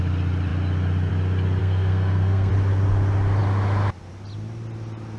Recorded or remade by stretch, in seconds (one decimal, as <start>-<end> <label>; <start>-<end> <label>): 0.0-1.6 recorded; 1.6-2.5 remade; 2.5-5.2 recorded